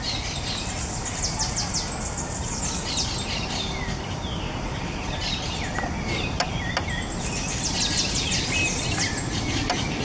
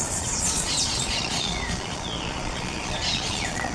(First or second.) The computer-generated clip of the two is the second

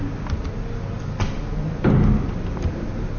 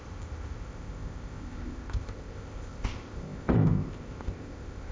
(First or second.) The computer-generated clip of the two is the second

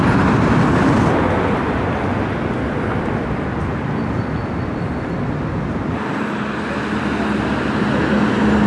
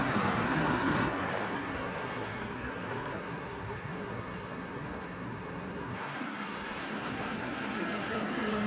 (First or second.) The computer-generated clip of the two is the second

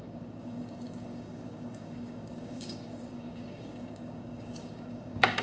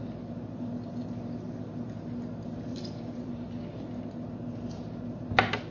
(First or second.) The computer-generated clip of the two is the first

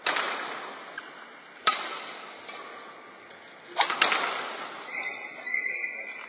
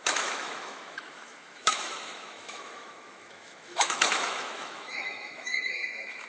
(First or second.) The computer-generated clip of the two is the second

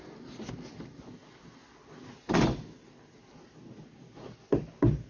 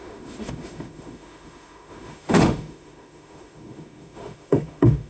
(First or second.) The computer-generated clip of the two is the second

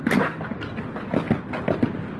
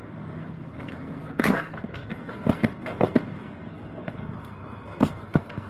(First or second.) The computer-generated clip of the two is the second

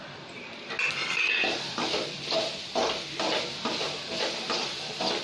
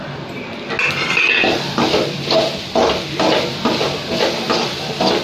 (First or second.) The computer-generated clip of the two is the first